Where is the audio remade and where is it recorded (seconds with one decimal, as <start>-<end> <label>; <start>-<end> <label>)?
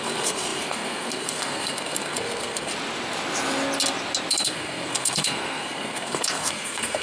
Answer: 0.0-2.7 remade; 2.7-4.3 recorded; 4.3-7.0 remade